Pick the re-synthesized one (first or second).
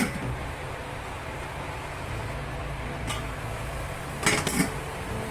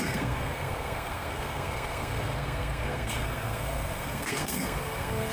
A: second